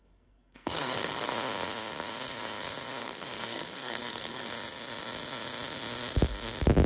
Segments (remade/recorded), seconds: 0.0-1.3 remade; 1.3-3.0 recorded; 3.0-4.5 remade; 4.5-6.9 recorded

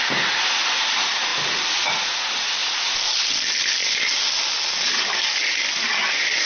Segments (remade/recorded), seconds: 0.0-6.5 recorded

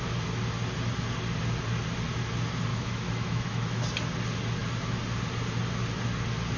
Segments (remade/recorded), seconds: 0.0-2.7 recorded; 2.7-3.9 remade; 3.9-6.6 recorded

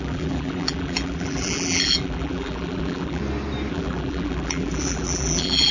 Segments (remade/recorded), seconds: 0.0-3.2 remade; 3.2-3.7 recorded; 3.7-5.7 remade

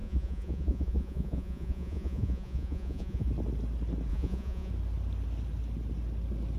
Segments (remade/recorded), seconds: 0.0-3.3 remade; 3.3-4.1 recorded; 4.1-4.7 remade; 4.7-6.6 recorded

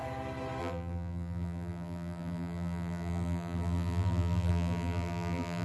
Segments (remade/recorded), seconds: 0.0-0.6 recorded; 0.6-5.6 remade

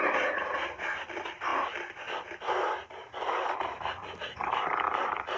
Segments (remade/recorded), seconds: 0.0-5.4 recorded